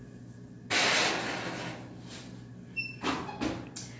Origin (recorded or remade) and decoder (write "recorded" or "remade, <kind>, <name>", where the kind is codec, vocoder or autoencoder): recorded